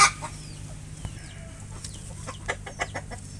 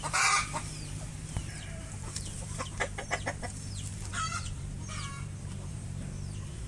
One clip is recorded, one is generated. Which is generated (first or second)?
second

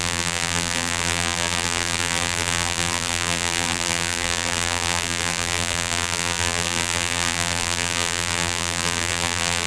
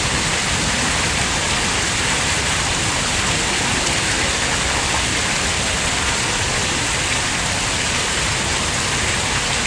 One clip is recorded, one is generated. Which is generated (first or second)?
first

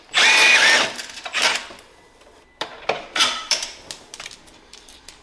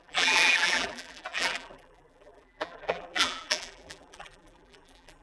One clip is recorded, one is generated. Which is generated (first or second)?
second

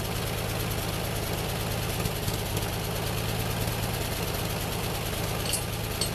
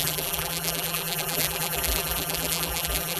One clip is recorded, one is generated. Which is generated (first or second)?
second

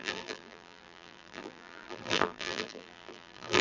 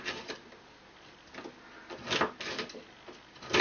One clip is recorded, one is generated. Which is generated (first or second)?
first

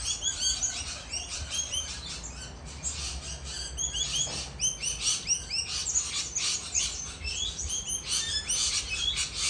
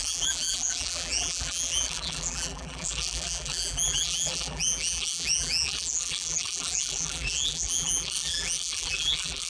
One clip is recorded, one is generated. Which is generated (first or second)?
second